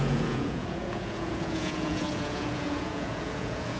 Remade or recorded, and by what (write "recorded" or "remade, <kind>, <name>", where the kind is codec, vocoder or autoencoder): remade, vocoder, Vocos